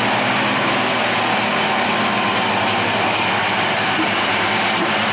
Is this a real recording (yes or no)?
yes